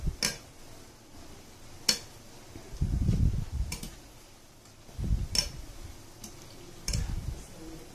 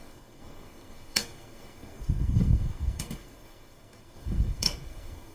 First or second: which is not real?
second